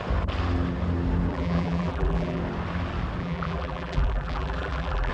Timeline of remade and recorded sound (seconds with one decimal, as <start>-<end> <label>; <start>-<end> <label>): 0.0-1.3 recorded; 1.3-2.4 remade; 2.4-3.2 recorded; 3.2-5.1 remade